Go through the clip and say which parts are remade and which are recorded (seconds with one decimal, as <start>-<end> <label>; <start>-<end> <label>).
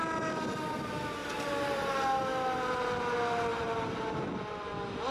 0.0-1.2 recorded; 1.2-1.9 remade; 1.9-3.5 recorded; 3.5-4.3 remade; 4.3-5.1 recorded